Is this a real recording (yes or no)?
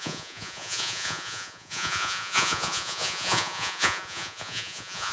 no